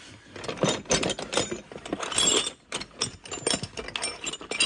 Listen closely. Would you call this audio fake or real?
real